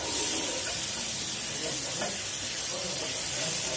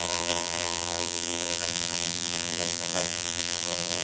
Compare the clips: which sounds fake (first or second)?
second